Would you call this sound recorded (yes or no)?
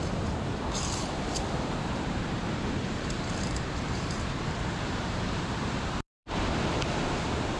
no